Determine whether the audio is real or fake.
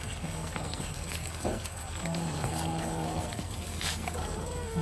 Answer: fake